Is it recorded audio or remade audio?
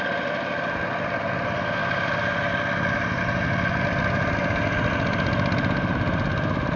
recorded